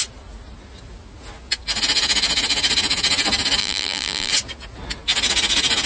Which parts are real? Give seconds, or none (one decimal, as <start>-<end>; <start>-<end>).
0.0-3.6; 4.3-5.9